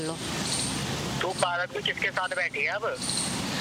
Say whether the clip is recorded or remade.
recorded